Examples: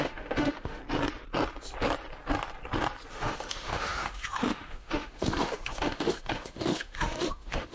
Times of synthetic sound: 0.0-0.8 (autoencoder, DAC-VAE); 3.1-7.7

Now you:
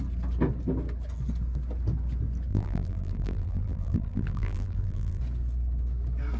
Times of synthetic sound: 2.5-5.2 (vocoder, BigVGAN v2)

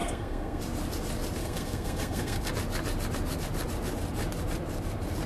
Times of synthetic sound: 0.0-0.6 (codec, SNAC); 1.4-2.5

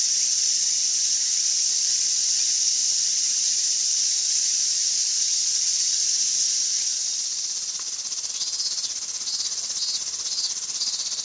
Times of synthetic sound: 2.8-6.6 (vocoder, BigVGAN v2)

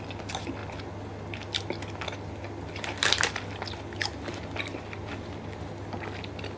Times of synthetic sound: none

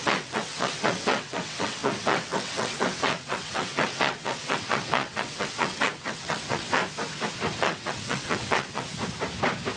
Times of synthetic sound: 0.0-6.8 (vocoder, WaveNeXt); 7.6-8.9

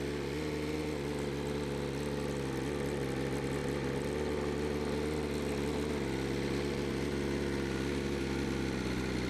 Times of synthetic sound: none